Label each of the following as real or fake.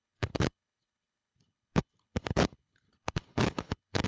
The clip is fake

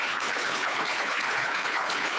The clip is fake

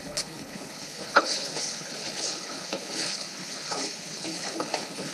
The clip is fake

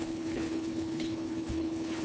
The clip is fake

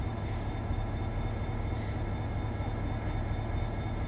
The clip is real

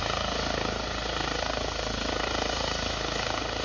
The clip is real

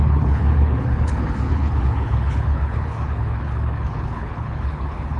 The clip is fake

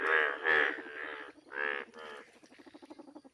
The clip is real